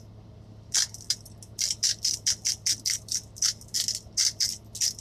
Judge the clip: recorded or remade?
recorded